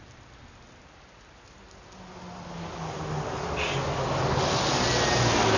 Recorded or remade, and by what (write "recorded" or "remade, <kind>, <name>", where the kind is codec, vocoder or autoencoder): recorded